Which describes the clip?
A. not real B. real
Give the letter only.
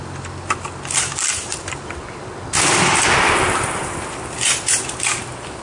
B